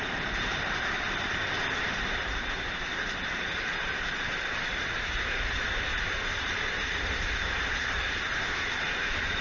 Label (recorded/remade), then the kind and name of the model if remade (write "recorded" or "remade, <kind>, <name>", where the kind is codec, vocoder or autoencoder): remade, vocoder, BigVGAN v2